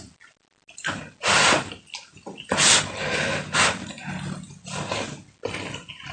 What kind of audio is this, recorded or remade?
recorded